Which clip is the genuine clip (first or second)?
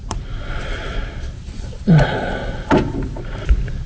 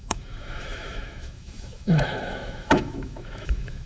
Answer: first